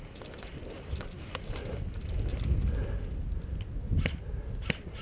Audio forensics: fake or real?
real